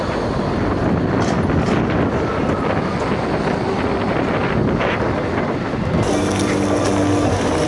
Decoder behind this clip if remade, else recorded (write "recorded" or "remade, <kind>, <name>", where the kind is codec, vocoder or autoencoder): recorded